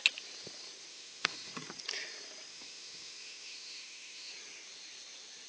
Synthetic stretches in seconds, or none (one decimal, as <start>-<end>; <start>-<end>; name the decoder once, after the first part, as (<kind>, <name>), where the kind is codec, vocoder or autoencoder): 0.9-1.5 (autoencoder, DAC-VAE); 2.5-4.3